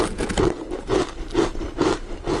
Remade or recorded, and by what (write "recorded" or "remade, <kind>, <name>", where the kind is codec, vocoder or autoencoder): recorded